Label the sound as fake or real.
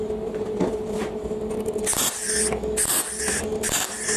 real